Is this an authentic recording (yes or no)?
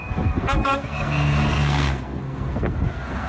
no